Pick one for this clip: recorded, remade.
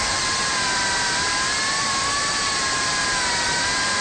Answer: remade